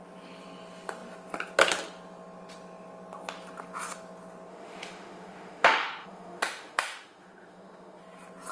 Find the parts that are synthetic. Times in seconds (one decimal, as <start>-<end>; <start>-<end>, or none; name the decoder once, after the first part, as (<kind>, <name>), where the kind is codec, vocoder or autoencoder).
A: 4.5-8.0 (autoencoder, DAC-VAE)